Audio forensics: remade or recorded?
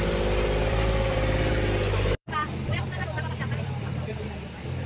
remade